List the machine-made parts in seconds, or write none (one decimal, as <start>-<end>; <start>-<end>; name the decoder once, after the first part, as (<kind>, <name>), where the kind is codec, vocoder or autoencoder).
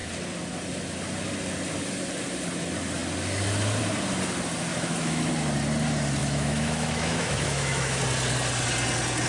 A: 4.7-5.3 (autoencoder, DAC-VAE); 6.2-8.0